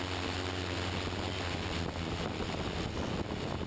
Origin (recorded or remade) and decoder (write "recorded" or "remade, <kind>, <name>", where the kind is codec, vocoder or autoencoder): recorded